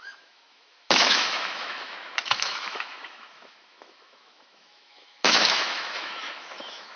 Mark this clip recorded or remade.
remade